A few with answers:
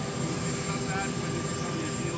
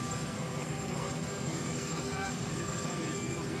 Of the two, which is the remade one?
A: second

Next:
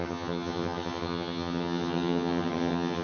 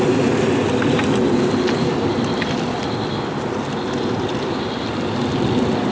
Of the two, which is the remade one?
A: first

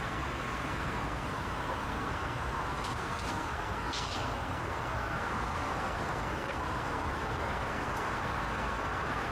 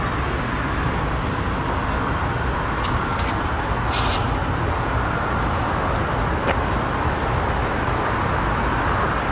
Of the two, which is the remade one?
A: first